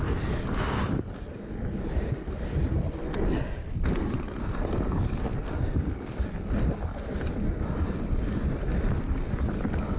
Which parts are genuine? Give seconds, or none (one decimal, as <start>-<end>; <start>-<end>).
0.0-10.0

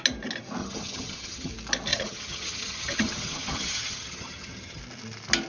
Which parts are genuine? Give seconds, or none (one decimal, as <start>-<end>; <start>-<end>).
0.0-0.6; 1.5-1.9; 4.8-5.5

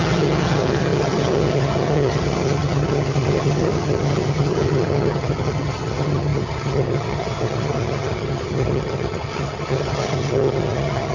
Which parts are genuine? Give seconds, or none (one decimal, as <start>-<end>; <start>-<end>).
none

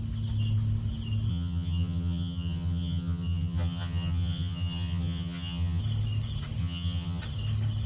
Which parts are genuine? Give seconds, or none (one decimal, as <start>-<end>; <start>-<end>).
0.0-1.3; 5.8-6.6; 7.2-7.9

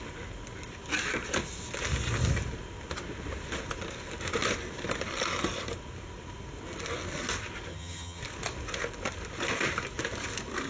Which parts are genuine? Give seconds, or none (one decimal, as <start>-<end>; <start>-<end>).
0.0-7.7; 8.2-10.7

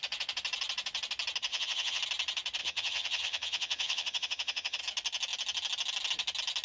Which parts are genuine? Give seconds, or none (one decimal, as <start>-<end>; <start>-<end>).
0.0-1.5; 2.0-2.6; 4.8-6.6

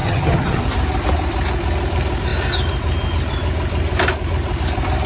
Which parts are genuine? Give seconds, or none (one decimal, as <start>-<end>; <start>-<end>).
0.6-5.1